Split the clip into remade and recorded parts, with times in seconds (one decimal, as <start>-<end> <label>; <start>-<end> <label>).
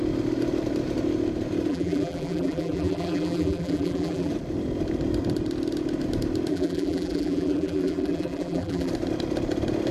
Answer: 0.0-1.7 recorded; 1.7-4.3 remade; 4.3-6.5 recorded; 6.5-8.9 remade; 8.9-9.9 recorded